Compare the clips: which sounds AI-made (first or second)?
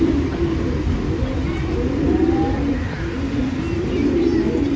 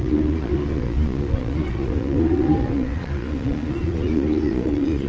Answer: second